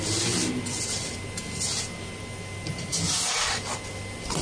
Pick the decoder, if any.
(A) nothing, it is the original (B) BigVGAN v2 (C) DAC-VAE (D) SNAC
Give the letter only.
A